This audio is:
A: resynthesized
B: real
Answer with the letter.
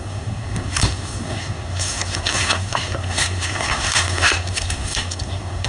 A